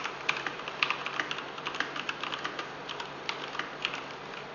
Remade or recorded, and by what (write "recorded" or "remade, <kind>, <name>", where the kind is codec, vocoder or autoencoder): recorded